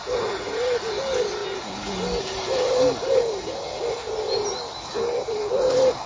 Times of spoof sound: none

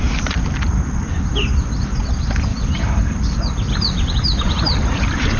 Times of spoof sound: none

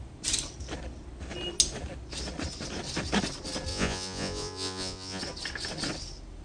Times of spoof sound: 3.7-5.2 (vocoder, Vocos)

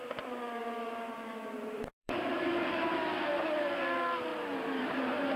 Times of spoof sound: 0.6-3.8 (vocoder, BigVGAN v2); 4.3-5.4